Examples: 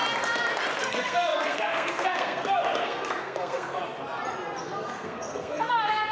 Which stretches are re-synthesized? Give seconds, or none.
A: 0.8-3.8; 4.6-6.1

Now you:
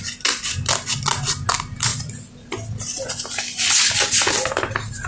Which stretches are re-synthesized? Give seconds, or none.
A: none

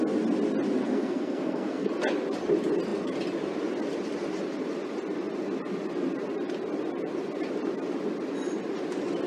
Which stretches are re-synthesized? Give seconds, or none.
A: 0.8-1.9

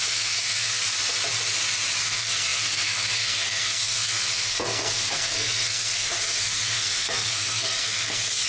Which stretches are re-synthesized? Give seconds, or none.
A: 0.0-0.8; 2.0-8.5

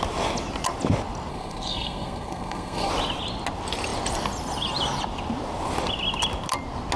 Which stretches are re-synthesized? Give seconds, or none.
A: 1.3-2.9

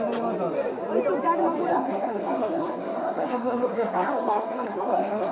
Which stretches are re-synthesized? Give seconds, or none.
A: 1.7-5.3

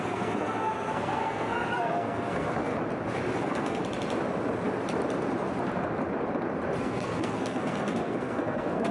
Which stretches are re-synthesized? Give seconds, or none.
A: 0.0-2.7; 3.4-3.8; 6.8-8.9

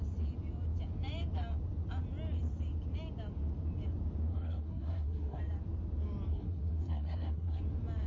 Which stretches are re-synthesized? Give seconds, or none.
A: 4.3-5.4; 6.3-7.6